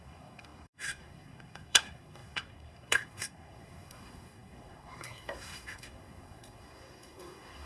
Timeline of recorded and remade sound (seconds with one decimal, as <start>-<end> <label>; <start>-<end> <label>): 0.0-7.7 remade